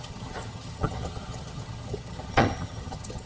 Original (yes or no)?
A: no